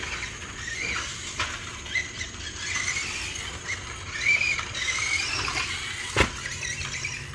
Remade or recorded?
recorded